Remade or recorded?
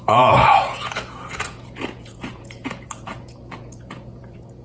remade